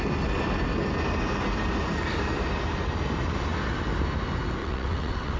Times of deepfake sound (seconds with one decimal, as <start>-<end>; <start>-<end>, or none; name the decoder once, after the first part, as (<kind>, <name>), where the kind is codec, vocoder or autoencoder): 4.6-5.4 (vocoder, WaveNeXt)